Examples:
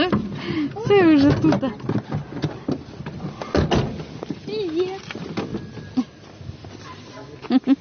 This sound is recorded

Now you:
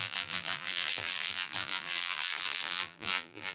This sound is remade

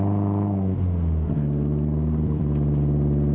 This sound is recorded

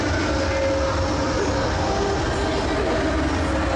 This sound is recorded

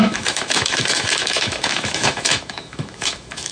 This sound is remade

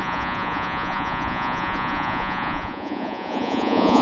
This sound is remade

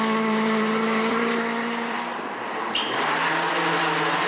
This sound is remade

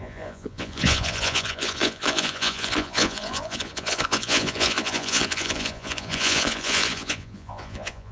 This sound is remade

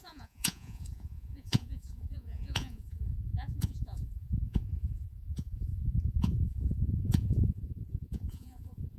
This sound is remade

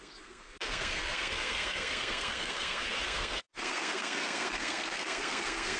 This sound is remade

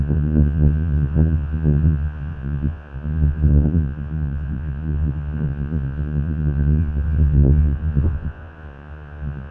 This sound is remade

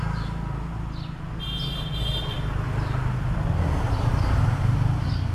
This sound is recorded